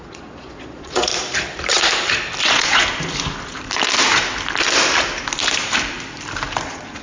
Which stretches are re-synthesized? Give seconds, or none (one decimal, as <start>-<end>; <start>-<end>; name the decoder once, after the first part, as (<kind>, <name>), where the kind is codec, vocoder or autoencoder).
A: 0.0-1.1 (vocoder, Vocos); 2.4-2.8; 6.6-7.0